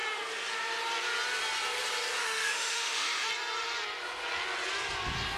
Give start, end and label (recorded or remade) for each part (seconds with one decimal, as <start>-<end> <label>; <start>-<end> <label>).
0.0-2.2 recorded; 2.2-3.3 remade; 3.3-5.4 recorded